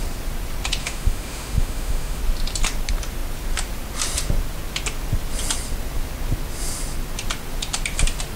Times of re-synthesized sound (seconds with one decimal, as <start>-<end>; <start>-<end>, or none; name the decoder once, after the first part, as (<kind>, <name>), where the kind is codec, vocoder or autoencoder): 0.8-2.2 (autoencoder, DAC-VAE)